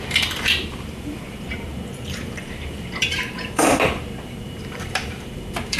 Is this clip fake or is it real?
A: fake